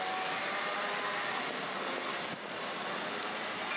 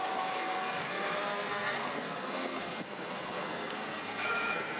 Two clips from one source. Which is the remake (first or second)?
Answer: second